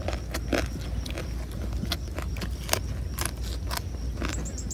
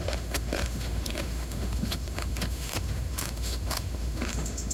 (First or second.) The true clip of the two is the first